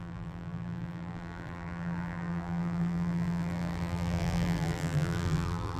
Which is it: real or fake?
fake